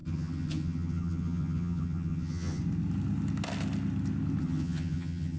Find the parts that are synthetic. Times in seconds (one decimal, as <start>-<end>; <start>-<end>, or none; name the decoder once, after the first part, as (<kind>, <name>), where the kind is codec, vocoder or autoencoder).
0.0-2.6 (vocoder, HiFi-GAN); 4.4-5.4